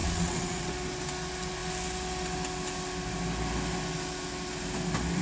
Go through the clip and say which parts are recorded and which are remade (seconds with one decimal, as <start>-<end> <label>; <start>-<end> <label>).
0.0-0.7 remade; 0.7-5.2 recorded